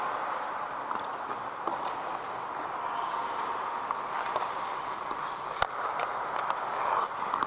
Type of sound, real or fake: real